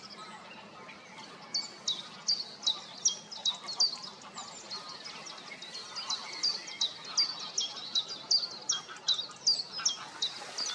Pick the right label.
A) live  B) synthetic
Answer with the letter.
A